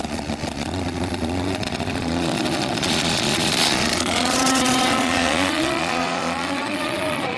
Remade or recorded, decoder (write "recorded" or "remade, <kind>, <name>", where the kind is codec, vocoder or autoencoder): remade, vocoder, Vocos